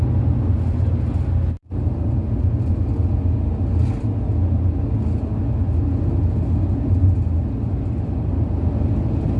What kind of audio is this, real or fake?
real